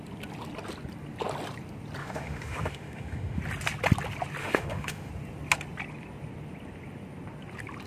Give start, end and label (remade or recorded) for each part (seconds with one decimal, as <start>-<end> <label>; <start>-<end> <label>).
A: 0.0-2.0 recorded; 2.0-3.4 remade; 3.4-4.4 recorded; 4.4-5.1 remade; 5.1-7.9 recorded